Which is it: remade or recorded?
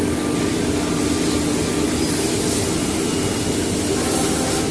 recorded